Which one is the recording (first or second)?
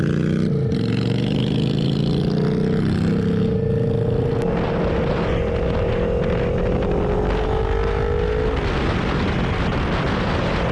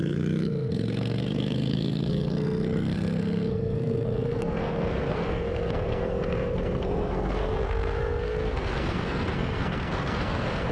first